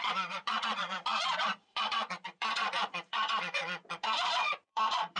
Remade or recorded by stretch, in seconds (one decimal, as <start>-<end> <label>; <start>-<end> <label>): 0.0-5.2 remade